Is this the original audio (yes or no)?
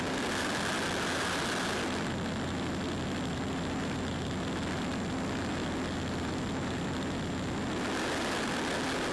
yes